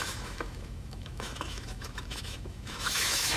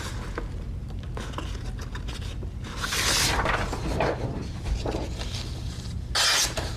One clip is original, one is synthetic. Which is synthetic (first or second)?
first